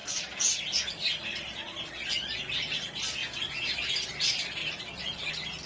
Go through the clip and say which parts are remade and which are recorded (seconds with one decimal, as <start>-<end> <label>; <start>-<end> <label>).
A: 0.0-5.7 recorded